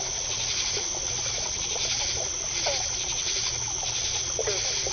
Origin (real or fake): real